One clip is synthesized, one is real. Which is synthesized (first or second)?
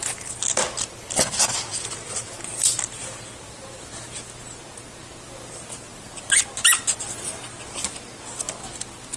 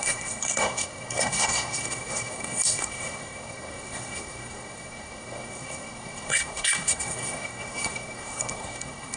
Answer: second